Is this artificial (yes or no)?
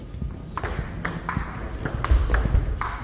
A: no